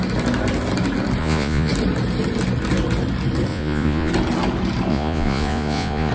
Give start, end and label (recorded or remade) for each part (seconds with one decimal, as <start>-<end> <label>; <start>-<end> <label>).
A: 0.0-1.2 recorded; 1.2-1.7 remade; 1.7-3.5 recorded; 3.5-4.1 remade; 4.1-4.9 recorded; 4.9-6.1 remade